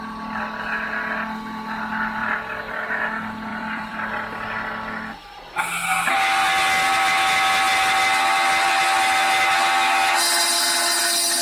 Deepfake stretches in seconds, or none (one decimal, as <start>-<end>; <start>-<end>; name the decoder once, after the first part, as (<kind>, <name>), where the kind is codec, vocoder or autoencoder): 2.2-2.9 (vocoder, BigVGAN v2); 3.5-4.1